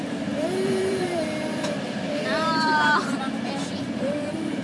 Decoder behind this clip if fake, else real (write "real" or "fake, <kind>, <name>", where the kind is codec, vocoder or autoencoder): fake, vocoder, BigVGAN v2